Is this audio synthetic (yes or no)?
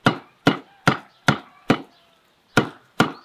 no